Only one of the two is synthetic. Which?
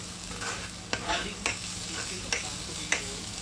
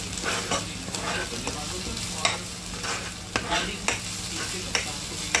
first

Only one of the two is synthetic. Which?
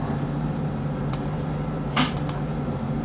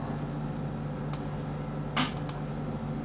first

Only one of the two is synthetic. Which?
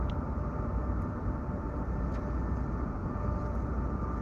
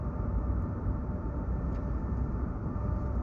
second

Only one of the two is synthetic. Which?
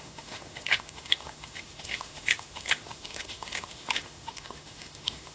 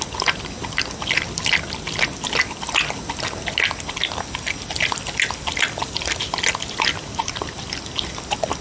first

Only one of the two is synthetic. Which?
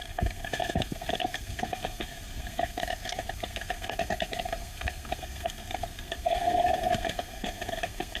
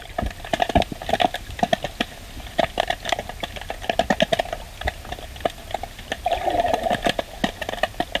first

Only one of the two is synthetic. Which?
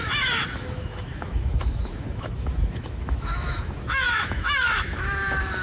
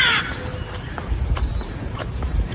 first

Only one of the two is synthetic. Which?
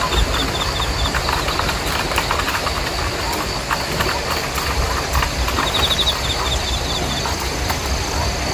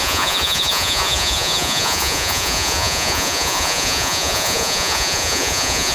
second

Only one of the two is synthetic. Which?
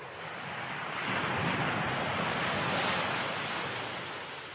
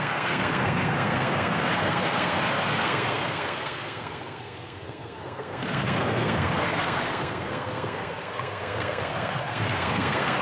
second